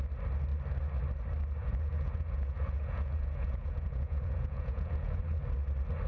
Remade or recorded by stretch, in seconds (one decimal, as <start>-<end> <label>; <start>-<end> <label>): 0.0-1.6 recorded; 1.6-5.2 remade; 5.2-6.1 recorded